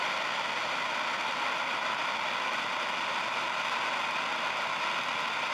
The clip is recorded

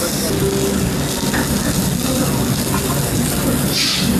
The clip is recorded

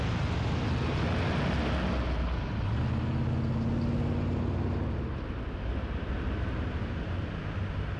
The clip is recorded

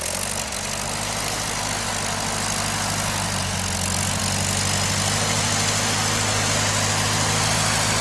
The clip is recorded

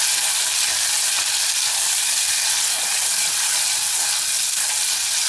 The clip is recorded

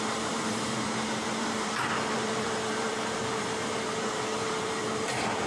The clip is remade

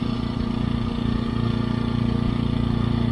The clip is recorded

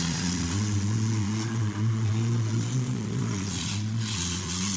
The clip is remade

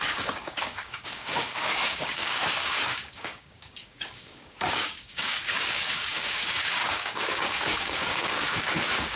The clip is remade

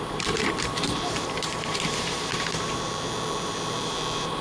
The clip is remade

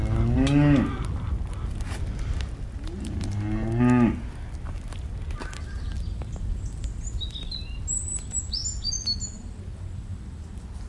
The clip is recorded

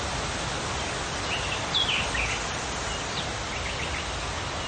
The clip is recorded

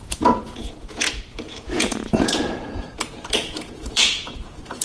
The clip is remade